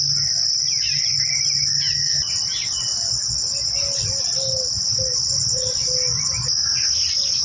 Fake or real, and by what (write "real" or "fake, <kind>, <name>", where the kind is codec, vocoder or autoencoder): real